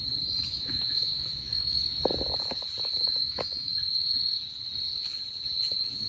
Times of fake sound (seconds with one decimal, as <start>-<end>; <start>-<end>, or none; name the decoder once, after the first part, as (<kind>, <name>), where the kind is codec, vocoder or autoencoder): 0.5-1.8 (autoencoder, DAC-VAE); 2.9-3.7